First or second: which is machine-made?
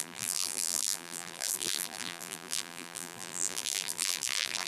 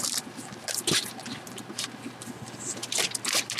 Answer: first